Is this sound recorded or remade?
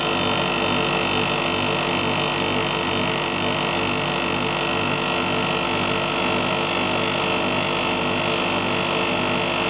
recorded